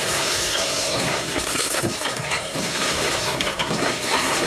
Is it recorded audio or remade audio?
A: remade